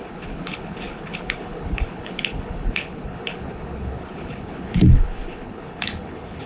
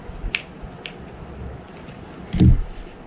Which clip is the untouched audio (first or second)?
second